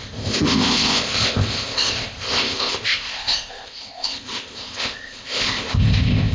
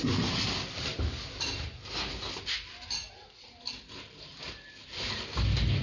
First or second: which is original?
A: second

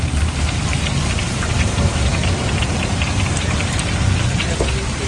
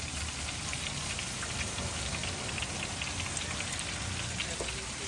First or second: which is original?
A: second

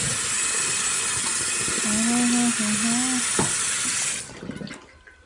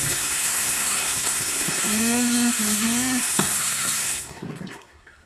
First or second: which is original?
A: first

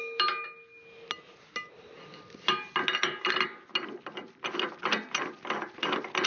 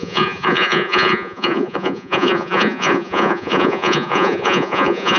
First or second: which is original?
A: first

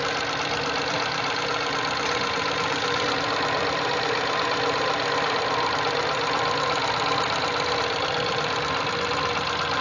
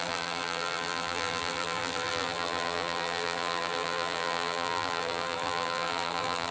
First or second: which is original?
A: first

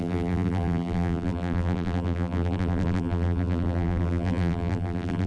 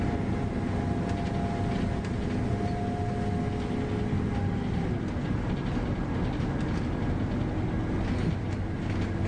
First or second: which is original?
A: second